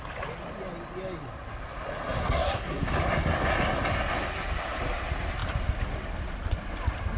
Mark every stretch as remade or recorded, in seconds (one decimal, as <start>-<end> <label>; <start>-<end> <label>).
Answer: 0.0-2.2 recorded; 2.2-2.8 remade; 2.8-7.2 recorded